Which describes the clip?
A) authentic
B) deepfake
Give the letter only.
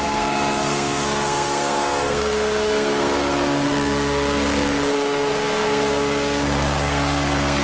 B